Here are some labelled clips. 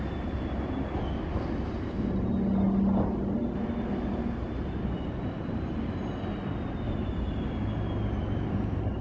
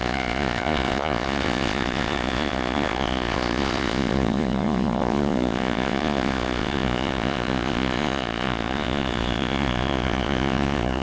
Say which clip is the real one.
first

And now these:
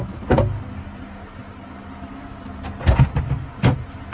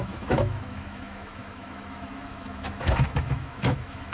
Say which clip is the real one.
first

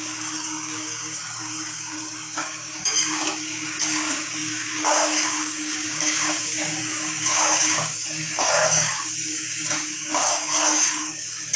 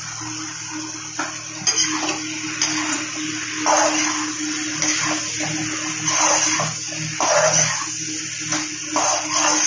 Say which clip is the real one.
second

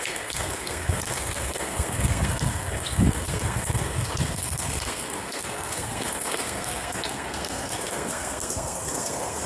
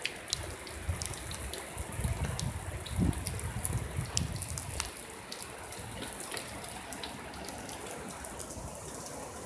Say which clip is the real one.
second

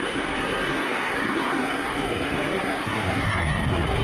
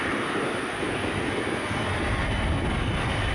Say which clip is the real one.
second